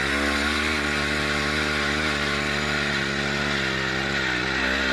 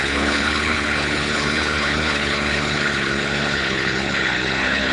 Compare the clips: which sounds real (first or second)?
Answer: first